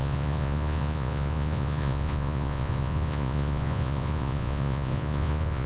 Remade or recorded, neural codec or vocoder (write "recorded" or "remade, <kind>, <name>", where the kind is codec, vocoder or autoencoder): remade, vocoder, Vocos